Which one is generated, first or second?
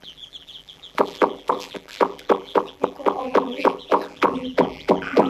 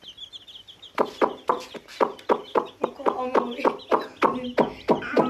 first